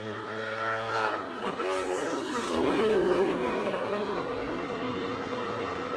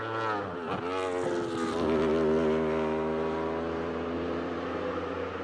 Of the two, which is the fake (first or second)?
first